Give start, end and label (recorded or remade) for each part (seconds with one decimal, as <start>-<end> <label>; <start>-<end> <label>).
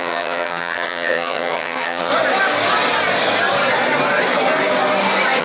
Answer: 0.0-2.1 remade; 2.1-5.4 recorded